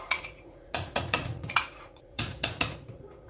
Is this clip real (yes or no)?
no